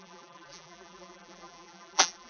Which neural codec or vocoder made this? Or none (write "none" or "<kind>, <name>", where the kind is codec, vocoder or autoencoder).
vocoder, BigVGAN v2